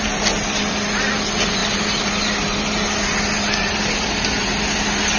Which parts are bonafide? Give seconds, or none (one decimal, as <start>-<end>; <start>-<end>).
0.0-5.2